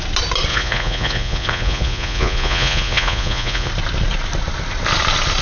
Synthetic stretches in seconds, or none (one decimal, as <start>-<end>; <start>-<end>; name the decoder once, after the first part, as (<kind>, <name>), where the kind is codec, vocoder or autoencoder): 0.5-3.7 (vocoder, Vocos)